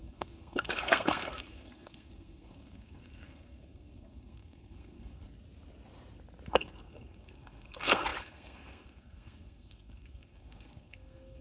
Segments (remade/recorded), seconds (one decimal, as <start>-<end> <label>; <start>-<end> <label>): 0.0-5.2 remade; 5.2-6.5 recorded; 6.5-11.4 remade